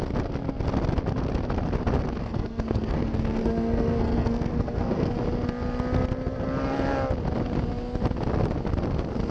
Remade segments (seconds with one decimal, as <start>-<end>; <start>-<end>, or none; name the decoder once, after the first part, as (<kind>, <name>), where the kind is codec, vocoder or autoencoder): 2.2-5.1 (codec, SNAC)